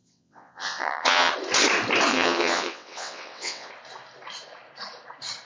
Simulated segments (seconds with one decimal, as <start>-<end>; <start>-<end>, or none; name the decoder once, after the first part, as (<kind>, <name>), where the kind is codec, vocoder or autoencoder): 0.0-1.3 (vocoder, WaveNeXt); 2.1-3.7